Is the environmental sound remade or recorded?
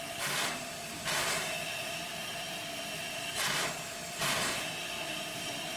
remade